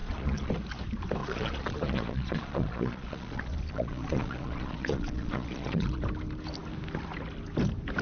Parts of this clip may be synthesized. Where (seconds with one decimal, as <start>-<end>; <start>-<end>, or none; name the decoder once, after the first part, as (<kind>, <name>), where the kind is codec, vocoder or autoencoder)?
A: 0.0-0.5 (vocoder, Vocos); 1.2-6.0